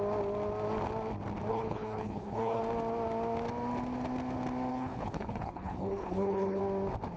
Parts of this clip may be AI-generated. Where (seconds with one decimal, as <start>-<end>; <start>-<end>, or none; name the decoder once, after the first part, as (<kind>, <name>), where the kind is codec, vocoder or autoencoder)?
1.5-2.6 (codec, HILCodec); 4.7-6.6